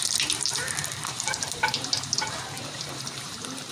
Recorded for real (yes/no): no